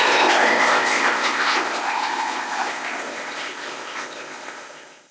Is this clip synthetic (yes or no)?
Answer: yes